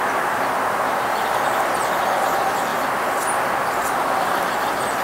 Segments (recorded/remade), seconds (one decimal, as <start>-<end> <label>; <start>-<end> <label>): 0.0-2.7 recorded; 2.7-4.5 remade; 4.5-5.0 recorded